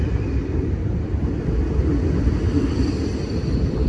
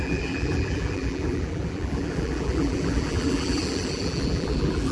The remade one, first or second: second